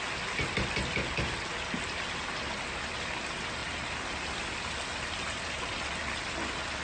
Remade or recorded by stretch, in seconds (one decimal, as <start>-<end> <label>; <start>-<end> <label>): 0.0-6.8 recorded